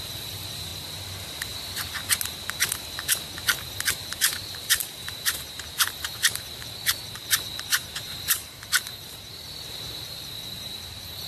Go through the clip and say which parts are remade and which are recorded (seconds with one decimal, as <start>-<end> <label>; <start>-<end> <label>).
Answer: 0.0-0.7 remade; 0.7-3.9 recorded; 3.9-11.3 remade

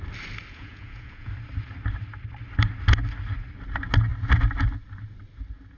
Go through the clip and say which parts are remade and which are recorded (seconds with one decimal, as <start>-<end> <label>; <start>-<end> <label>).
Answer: 0.0-0.5 recorded; 0.5-1.3 remade; 1.3-5.8 recorded

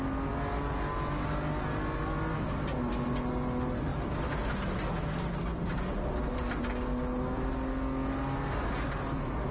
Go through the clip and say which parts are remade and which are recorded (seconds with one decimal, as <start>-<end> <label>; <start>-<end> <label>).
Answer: 0.0-9.5 recorded

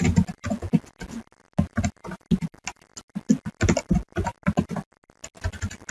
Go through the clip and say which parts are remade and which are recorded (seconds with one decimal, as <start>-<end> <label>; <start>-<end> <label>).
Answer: 0.0-5.9 recorded

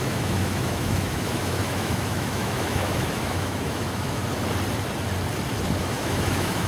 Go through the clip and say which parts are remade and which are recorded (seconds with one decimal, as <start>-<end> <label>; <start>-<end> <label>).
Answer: 0.0-4.2 remade; 4.2-5.8 recorded; 5.8-6.7 remade

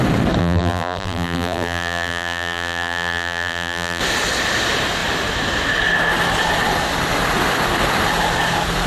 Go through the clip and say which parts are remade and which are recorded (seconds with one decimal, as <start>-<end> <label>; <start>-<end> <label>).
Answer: 0.0-0.4 recorded; 0.4-4.0 remade; 4.0-8.9 recorded